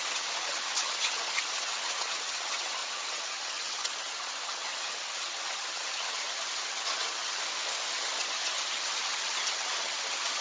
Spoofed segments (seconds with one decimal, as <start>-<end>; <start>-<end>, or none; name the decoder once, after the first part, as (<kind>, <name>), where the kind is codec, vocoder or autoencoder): 0.0-7.4 (vocoder, HiFi-GAN); 7.9-10.4